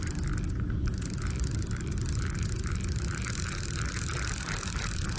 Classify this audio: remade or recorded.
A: recorded